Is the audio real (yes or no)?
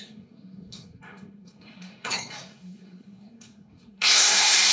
no